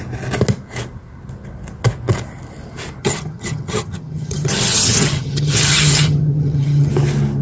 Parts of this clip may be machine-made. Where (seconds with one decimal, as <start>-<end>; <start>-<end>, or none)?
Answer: 3.0-6.9